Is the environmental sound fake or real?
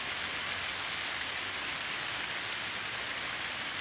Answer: real